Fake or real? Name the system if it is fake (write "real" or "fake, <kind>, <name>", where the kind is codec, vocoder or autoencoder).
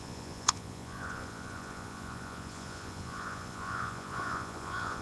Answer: fake, vocoder, Vocos